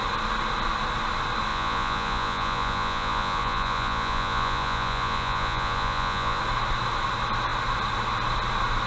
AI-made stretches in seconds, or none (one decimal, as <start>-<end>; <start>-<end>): 1.5-6.4